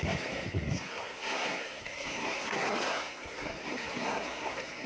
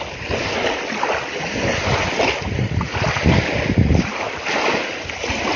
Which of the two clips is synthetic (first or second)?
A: first